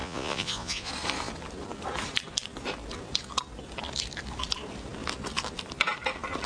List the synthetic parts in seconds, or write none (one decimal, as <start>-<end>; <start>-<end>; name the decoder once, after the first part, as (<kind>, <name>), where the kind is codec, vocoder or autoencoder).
0.0-0.9 (vocoder, Vocos)

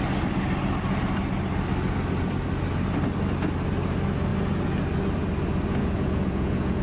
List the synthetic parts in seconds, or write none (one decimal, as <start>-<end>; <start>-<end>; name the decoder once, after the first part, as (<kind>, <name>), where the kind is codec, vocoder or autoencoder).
5.8-6.8 (vocoder, Vocos)